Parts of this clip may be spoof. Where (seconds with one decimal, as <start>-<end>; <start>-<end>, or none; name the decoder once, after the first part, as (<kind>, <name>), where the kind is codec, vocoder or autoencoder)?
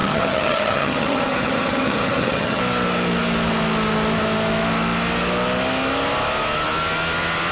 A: 0.0-2.6 (vocoder, HiFi-GAN)